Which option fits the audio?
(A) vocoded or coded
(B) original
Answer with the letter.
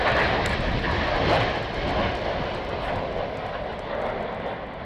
B